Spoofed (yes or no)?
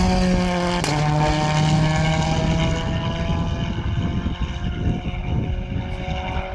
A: no